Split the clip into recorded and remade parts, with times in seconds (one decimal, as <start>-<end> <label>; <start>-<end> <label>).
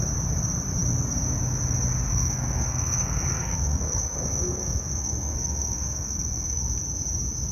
0.0-2.1 recorded; 2.1-6.6 remade; 6.6-7.5 recorded